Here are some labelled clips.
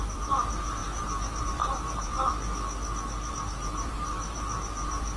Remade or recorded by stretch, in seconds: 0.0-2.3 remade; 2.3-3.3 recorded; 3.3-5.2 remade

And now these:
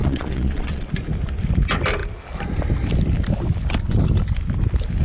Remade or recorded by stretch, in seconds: 0.0-0.9 remade; 0.9-5.0 recorded

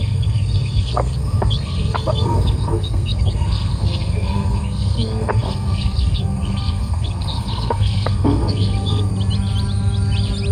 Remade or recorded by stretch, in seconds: 0.0-9.1 remade; 9.1-10.5 recorded

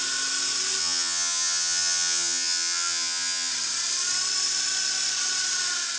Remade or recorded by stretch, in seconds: 0.0-0.8 recorded; 0.8-3.5 remade; 3.5-6.0 recorded

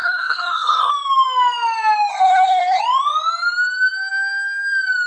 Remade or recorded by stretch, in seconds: 0.0-0.9 remade; 0.9-2.1 recorded; 2.1-2.8 remade; 2.8-5.1 recorded

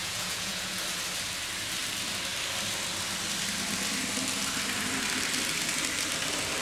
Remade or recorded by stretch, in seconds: 0.0-0.8 remade; 0.8-6.6 recorded